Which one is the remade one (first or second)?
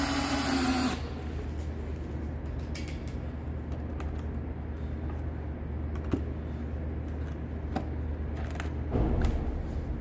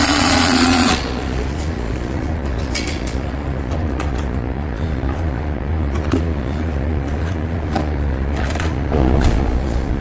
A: second